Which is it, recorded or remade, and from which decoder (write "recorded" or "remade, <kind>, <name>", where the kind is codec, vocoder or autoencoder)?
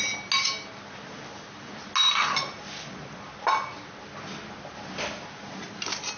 recorded